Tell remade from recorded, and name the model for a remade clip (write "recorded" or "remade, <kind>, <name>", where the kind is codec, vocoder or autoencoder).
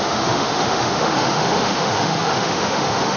remade, autoencoder, DAC-VAE